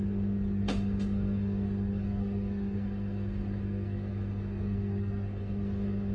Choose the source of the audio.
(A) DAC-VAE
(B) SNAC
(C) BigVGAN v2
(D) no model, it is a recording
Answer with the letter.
B